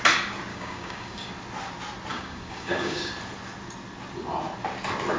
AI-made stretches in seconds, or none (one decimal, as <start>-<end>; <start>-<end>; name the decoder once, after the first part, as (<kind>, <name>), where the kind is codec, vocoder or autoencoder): 0.5-1.3 (codec, DAC); 2.1-3.1